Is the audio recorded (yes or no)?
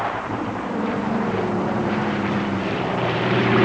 no